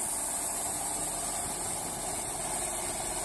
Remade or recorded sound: recorded